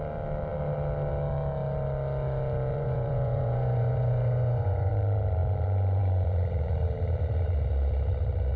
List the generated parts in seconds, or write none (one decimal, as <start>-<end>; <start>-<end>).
2.7-4.9